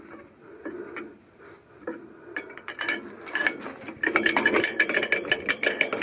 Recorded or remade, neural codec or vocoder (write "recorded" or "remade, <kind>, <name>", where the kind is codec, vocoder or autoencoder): recorded